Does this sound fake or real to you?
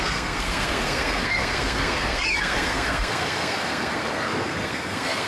fake